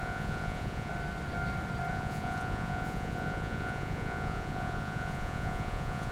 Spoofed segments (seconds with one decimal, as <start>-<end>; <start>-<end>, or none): 0.0-0.9; 1.9-6.1